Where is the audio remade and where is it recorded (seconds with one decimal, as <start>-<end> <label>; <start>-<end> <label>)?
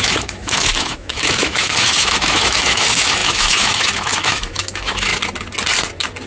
0.0-5.1 remade; 5.1-6.3 recorded